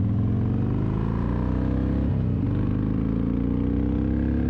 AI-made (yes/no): no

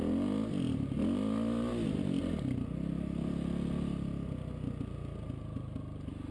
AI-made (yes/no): no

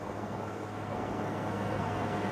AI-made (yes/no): yes